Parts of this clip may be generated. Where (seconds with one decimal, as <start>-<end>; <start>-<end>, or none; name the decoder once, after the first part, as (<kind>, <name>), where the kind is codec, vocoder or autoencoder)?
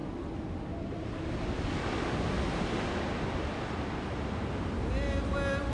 none